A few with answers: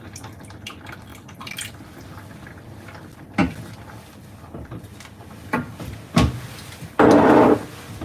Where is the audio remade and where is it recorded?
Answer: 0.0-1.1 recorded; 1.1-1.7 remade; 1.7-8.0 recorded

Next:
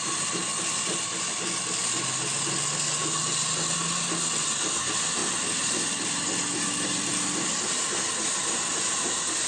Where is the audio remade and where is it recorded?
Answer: 0.0-9.5 recorded

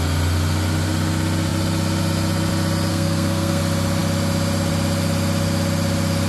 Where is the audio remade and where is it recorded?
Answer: 0.0-2.9 recorded; 2.9-3.6 remade; 3.6-6.3 recorded

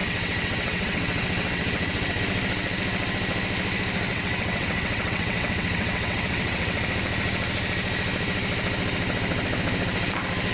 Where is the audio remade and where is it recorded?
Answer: 0.0-2.2 remade; 2.2-4.1 recorded; 4.1-6.8 remade; 6.8-10.5 recorded